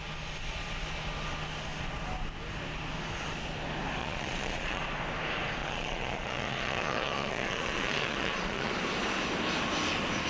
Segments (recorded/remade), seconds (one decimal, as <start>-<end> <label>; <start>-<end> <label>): 0.0-4.0 recorded; 4.0-4.8 remade; 4.8-5.6 recorded; 5.6-8.7 remade; 8.7-10.3 recorded